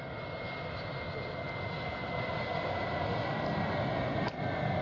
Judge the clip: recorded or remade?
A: recorded